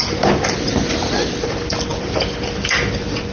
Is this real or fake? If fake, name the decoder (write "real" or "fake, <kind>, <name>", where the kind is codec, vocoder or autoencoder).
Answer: real